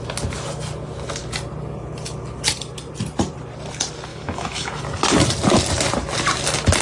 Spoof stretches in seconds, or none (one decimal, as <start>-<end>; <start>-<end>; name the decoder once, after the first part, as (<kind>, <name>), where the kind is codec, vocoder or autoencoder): 4.1-4.8 (autoencoder, DAC-VAE)